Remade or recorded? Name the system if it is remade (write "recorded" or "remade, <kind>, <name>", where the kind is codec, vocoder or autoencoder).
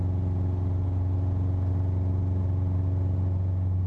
recorded